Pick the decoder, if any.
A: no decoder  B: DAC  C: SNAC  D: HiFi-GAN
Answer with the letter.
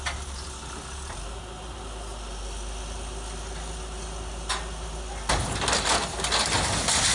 A